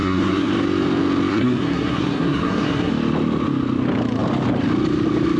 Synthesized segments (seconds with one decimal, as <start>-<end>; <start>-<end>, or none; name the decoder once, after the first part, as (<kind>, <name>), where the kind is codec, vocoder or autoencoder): 0.0-0.5 (codec, SNAC); 1.3-2.9